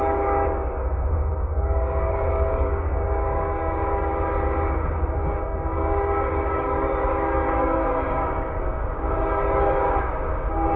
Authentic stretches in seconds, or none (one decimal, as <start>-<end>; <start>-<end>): 4.1-5.3